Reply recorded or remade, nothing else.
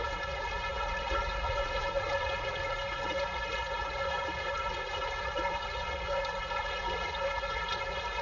remade